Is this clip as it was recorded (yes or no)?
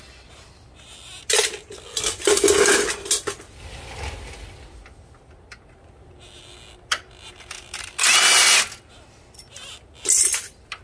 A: yes